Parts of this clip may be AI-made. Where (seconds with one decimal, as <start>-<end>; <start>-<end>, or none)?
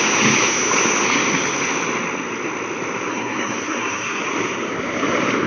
3.1-4.2